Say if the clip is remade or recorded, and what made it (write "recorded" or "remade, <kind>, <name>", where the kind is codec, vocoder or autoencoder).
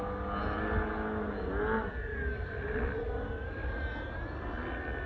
recorded